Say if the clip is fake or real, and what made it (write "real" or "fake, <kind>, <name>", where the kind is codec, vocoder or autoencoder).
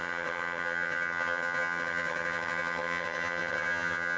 fake, vocoder, HiFi-GAN